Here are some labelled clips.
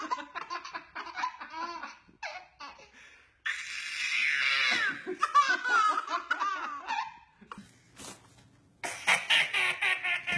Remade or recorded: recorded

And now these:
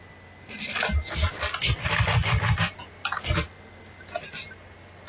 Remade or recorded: recorded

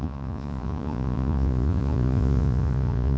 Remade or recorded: remade